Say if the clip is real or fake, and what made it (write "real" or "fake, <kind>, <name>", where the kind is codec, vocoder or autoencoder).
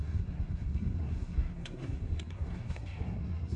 fake, codec, SNAC